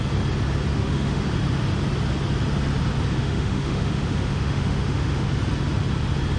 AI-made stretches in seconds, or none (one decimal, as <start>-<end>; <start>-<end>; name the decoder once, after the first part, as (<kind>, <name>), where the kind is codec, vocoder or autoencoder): 0.7-1.2 (autoencoder, DAC-VAE); 3.2-5.3